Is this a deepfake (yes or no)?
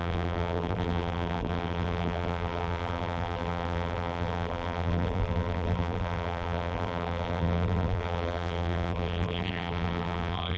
yes